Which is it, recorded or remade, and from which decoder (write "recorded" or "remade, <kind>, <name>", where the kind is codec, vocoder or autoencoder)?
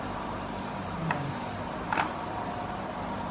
remade, vocoder, BigVGAN v2